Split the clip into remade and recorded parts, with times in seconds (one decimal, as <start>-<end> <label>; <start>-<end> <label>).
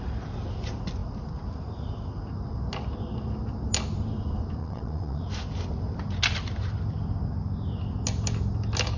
0.0-4.6 recorded; 4.6-5.2 remade; 5.2-9.0 recorded